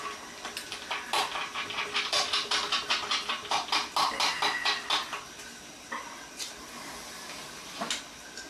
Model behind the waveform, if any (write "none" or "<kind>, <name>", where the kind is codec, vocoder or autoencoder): none